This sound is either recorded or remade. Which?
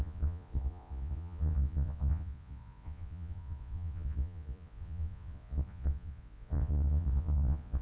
remade